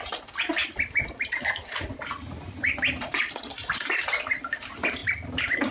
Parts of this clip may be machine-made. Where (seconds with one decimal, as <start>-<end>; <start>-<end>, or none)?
0.6-4.0; 5.0-5.7